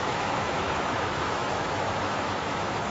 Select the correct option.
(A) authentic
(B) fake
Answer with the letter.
B